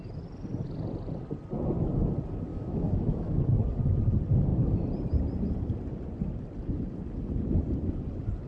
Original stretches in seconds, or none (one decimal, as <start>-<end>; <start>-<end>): 0.0-2.5; 3.4-8.5